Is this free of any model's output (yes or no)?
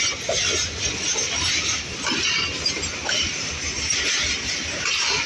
no